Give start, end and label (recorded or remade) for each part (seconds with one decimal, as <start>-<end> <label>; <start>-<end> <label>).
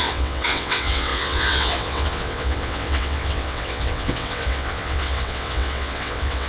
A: 0.0-6.5 remade